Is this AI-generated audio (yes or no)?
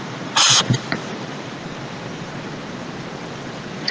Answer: yes